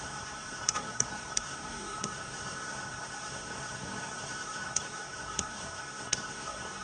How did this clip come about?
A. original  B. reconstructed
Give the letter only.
B